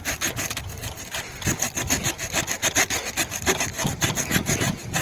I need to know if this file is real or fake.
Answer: real